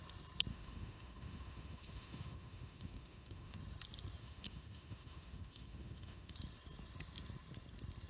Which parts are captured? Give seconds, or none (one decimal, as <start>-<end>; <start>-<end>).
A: 0.0-0.5; 3.6-4.2; 6.3-8.1